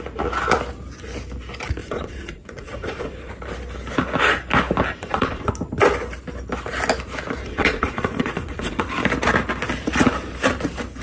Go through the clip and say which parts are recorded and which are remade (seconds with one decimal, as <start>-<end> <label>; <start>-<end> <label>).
0.0-1.8 recorded; 1.8-3.3 remade; 3.3-5.0 recorded; 5.0-5.5 remade; 5.5-7.4 recorded; 7.4-8.8 remade; 8.8-11.0 recorded